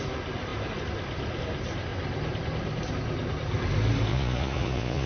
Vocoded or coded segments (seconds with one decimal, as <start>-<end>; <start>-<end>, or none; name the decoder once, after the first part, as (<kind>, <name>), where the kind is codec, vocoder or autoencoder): 4.1-5.1 (vocoder, Vocos)